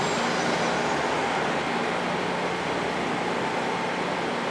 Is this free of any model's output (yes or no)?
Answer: yes